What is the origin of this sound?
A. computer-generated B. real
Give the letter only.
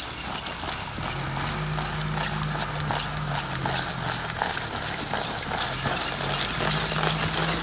B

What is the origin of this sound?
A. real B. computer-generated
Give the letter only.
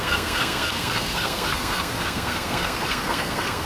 B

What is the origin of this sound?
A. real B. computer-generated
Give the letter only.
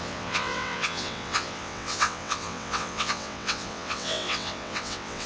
B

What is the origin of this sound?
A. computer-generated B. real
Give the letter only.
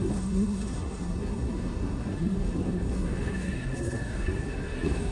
A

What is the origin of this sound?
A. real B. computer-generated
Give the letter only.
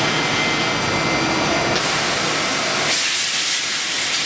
A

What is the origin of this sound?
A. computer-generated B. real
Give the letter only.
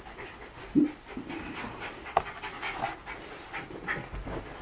B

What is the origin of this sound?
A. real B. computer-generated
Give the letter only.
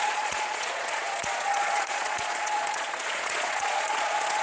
B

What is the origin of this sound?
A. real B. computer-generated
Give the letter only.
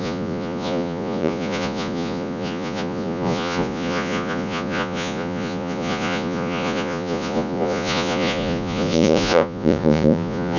B